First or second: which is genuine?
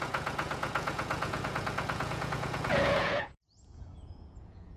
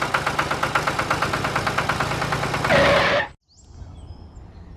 second